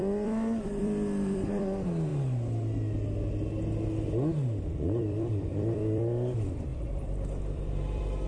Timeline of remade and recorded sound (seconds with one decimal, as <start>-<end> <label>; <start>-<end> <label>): 0.0-2.1 remade; 2.1-4.7 recorded; 4.7-8.3 remade